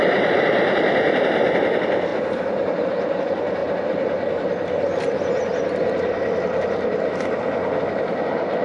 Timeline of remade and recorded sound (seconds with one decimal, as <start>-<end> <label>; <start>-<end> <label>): 0.0-2.1 recorded; 2.1-3.2 remade; 3.2-8.6 recorded